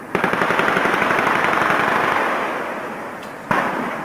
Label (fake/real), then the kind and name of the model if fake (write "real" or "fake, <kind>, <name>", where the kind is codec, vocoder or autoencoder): real